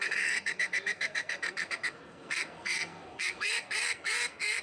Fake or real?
fake